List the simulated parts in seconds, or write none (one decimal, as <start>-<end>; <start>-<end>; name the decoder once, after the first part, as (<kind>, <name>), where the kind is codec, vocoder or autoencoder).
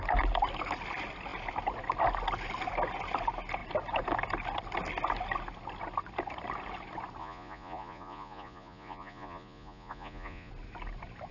7.2-10.5 (vocoder, Vocos)